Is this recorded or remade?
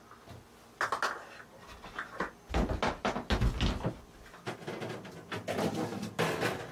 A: recorded